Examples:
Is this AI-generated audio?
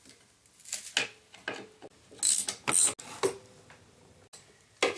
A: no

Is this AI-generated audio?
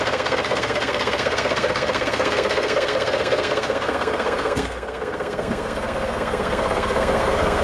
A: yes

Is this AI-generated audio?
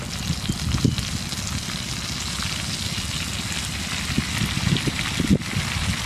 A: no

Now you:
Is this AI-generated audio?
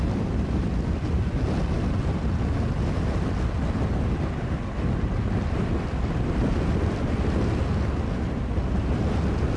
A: no